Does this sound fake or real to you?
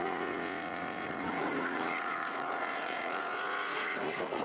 fake